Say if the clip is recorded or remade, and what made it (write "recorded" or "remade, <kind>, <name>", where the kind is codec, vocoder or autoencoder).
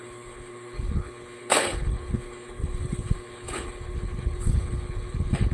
remade, codec, HILCodec